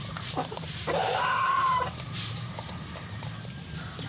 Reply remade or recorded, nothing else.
remade